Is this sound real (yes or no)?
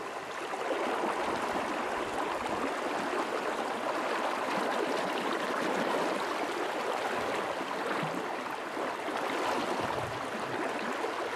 yes